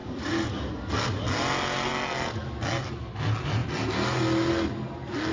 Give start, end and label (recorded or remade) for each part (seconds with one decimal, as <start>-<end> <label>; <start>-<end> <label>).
0.0-0.5 remade; 0.5-5.3 recorded